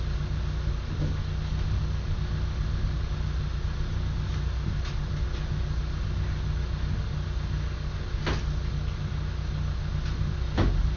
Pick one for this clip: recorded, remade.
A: recorded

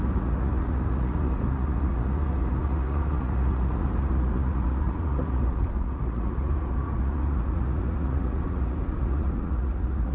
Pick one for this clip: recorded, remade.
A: remade